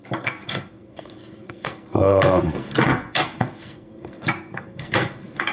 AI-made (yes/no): yes